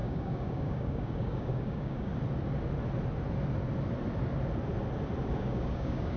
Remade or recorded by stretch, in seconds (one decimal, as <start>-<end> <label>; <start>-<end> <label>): 0.0-2.1 remade; 2.1-5.3 recorded; 5.3-6.2 remade